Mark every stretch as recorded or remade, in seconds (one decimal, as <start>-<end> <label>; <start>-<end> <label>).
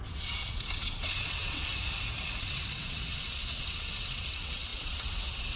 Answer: 0.0-1.8 remade; 1.8-2.4 recorded; 2.4-5.6 remade